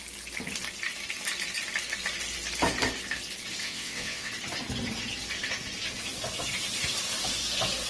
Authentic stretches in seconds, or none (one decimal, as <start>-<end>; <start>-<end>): 0.0-3.6; 4.3-7.9